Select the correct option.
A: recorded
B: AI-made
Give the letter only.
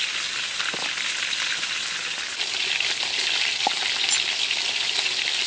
A